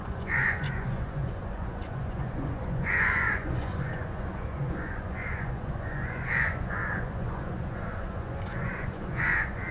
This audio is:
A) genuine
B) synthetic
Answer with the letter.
B